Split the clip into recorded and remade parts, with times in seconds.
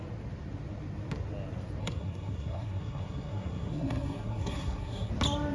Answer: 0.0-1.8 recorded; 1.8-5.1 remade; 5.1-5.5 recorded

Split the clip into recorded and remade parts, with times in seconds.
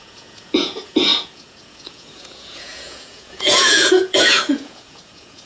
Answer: 0.0-5.5 remade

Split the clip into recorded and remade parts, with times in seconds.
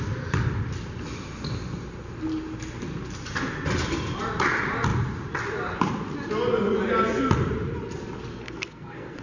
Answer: 0.0-8.3 recorded; 8.3-9.2 remade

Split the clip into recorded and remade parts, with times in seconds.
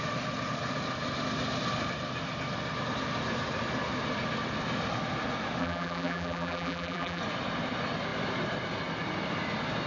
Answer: 0.0-5.6 recorded; 5.6-7.2 remade; 7.2-9.9 recorded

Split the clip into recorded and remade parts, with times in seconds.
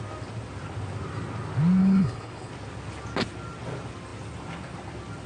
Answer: 0.0-1.8 recorded; 1.8-2.5 remade; 2.5-5.3 recorded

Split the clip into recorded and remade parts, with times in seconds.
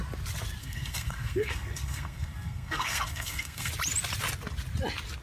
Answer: 0.0-0.6 recorded; 0.6-3.7 remade; 3.7-5.2 recorded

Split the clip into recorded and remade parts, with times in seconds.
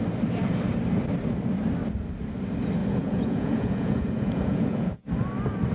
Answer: 0.0-2.8 recorded; 2.8-5.1 remade; 5.1-5.7 recorded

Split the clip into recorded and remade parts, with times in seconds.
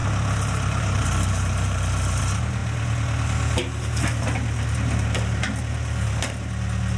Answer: 0.0-2.2 remade; 2.2-7.0 recorded